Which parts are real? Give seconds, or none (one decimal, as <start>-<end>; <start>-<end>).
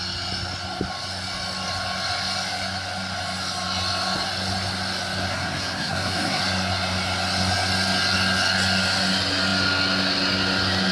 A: 0.0-5.3; 6.4-10.9